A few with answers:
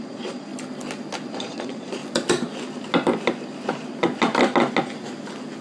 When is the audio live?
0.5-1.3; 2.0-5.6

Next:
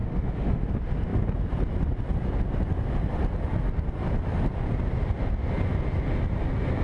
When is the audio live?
0.7-6.8

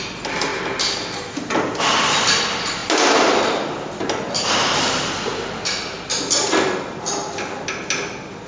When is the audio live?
0.0-8.5